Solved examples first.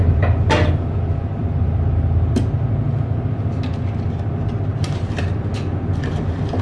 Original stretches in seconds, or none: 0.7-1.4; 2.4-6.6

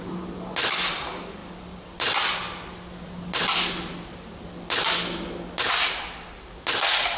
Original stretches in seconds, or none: 0.0-7.2